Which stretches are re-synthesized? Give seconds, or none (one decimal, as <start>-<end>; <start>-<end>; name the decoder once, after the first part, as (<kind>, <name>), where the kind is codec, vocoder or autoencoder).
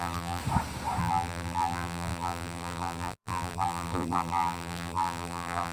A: 0.0-0.4 (vocoder, BigVGAN v2); 1.0-5.7